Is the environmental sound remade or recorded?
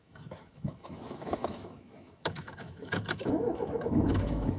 remade